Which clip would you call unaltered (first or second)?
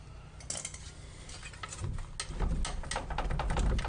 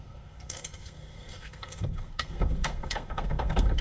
first